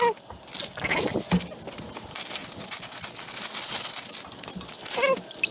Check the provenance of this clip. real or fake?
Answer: real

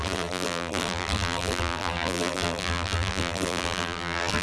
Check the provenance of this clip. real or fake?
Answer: fake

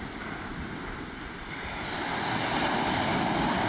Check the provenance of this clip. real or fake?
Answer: real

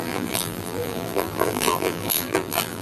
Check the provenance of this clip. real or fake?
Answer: fake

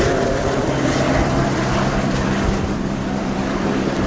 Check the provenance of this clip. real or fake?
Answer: fake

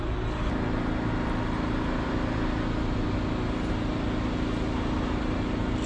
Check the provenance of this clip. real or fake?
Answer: real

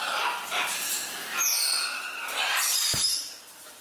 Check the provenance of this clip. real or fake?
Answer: fake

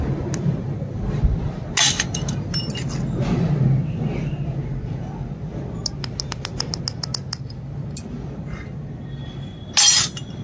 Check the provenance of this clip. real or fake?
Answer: real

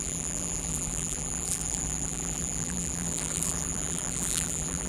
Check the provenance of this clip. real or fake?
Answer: fake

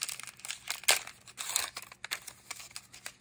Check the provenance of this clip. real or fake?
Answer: real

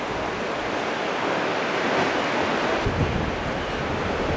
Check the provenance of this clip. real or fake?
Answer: real